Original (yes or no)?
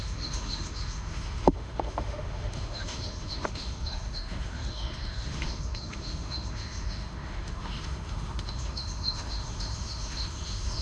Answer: no